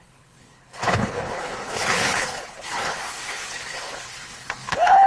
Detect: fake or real fake